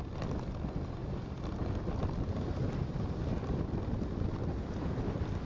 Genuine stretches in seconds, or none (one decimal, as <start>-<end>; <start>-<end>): 0.0-5.4